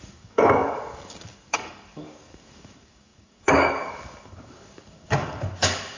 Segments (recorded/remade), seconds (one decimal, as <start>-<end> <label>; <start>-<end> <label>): 0.0-6.0 remade